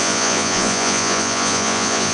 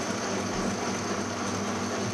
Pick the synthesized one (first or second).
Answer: first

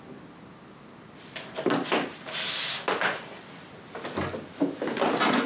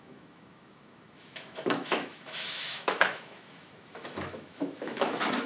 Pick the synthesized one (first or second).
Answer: second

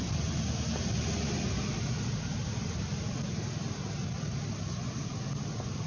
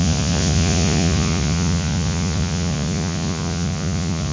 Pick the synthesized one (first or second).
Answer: second